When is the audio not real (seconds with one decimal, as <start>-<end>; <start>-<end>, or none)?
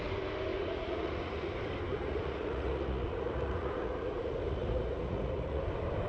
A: 0.5-1.5; 1.9-5.6